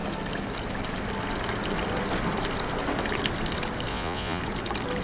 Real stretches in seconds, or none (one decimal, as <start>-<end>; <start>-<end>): 0.0-3.9; 4.4-5.0